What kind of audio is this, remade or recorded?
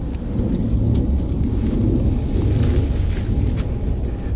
recorded